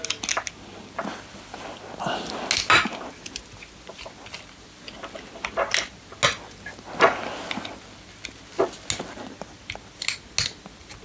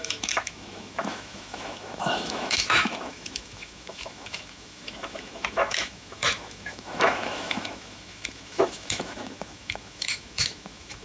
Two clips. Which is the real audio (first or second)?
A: first